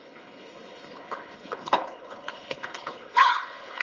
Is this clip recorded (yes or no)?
no